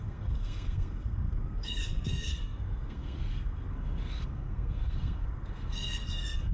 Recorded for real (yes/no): no